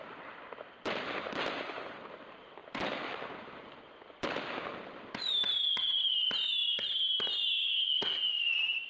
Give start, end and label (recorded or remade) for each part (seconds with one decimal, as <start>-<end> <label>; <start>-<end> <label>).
0.0-8.9 remade